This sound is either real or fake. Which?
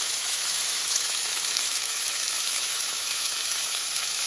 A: fake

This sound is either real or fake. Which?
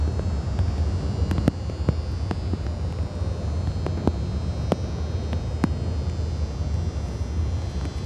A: real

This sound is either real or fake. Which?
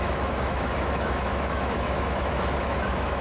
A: fake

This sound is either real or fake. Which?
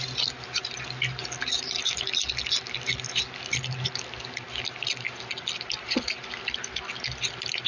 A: real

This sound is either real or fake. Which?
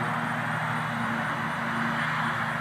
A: real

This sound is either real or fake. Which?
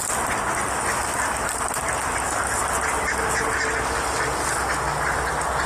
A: real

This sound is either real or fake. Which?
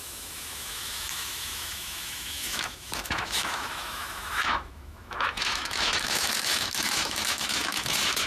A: fake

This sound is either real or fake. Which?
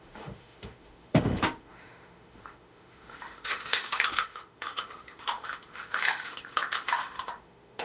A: fake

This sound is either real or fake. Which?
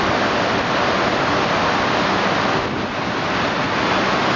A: real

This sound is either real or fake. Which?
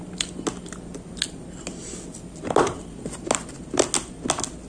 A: real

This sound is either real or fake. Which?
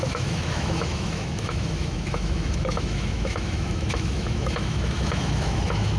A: fake